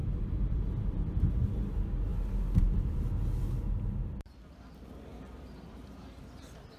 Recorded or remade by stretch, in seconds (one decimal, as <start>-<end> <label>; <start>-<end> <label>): 0.0-0.6 remade; 0.6-5.1 recorded; 5.1-6.8 remade